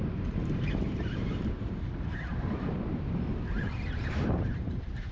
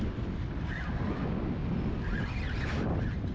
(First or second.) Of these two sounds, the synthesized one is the first